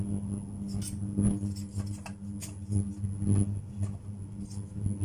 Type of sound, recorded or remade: recorded